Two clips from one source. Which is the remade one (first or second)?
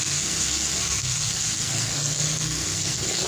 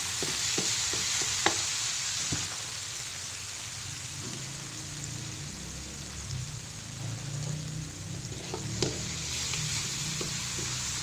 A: first